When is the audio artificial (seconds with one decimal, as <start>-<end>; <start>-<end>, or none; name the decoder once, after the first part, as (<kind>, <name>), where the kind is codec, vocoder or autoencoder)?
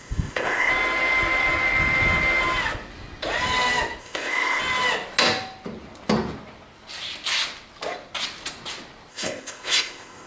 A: 0.0-0.7 (codec, ZipCodec); 4.0-4.6; 9.1-10.3